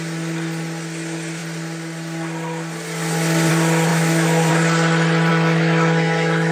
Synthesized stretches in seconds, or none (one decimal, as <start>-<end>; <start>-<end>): 3.9-4.5; 5.3-6.5